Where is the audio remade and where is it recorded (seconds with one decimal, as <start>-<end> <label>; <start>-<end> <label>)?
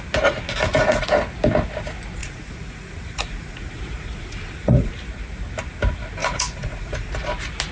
0.0-0.7 recorded; 0.7-1.2 remade; 1.2-2.2 recorded; 2.2-4.9 remade; 4.9-6.2 recorded; 6.2-7.1 remade; 7.1-7.7 recorded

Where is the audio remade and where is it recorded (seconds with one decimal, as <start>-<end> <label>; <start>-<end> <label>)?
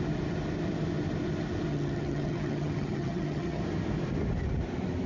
0.0-1.7 recorded; 1.7-3.6 remade; 3.6-5.1 recorded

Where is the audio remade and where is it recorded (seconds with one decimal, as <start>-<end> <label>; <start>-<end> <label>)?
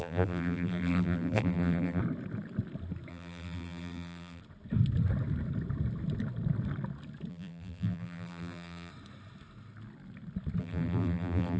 0.0-2.0 remade; 2.0-3.1 recorded; 3.1-4.4 remade; 4.4-7.3 recorded; 7.3-8.9 remade; 8.9-10.6 recorded; 10.6-11.6 remade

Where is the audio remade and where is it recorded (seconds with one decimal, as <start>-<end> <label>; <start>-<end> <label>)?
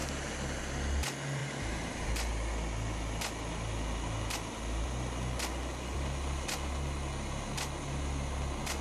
0.0-1.4 recorded; 1.4-2.3 remade; 2.3-8.8 recorded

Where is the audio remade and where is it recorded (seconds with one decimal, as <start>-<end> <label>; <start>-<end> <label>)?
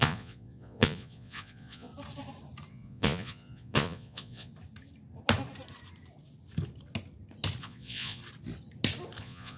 0.0-1.9 remade; 1.9-2.7 recorded; 2.7-4.5 remade; 4.5-7.6 recorded; 7.6-8.2 remade; 8.2-9.2 recorded; 9.2-9.6 remade